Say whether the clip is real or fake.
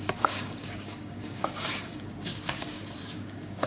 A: fake